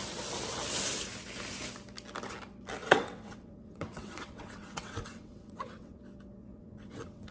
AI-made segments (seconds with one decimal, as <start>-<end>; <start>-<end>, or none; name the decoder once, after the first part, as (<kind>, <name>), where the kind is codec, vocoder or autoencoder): 2.8-6.0 (vocoder, WaveNeXt); 6.4-7.3